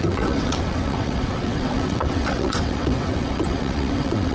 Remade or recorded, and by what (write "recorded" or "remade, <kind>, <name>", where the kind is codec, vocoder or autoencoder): remade, vocoder, WaveNeXt